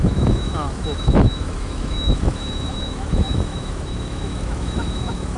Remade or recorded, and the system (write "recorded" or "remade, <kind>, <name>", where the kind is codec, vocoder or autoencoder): remade, autoencoder, DAC-VAE